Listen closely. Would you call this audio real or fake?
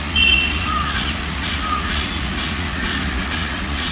fake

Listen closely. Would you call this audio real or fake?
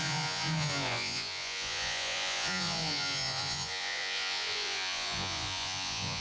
fake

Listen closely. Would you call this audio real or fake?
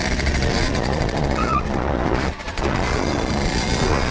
fake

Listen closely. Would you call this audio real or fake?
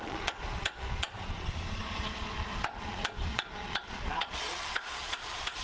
fake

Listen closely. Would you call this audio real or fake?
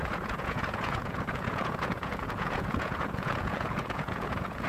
fake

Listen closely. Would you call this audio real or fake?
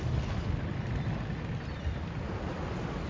real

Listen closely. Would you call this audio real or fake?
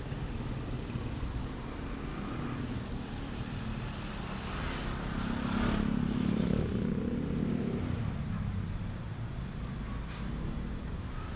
real